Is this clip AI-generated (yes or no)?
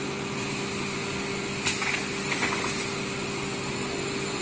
no